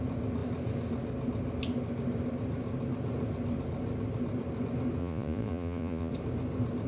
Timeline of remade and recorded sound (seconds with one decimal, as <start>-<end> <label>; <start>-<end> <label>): 0.0-5.0 recorded; 5.0-6.1 remade; 6.1-6.9 recorded